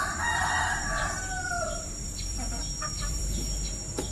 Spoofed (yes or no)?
yes